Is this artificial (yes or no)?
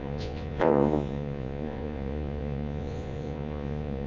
yes